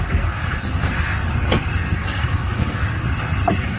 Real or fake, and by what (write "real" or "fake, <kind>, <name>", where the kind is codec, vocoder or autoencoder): fake, codec, SNAC